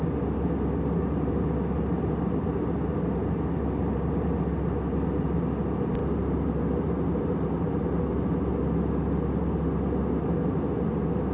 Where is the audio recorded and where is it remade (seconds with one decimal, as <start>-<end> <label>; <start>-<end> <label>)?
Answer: 0.0-11.3 recorded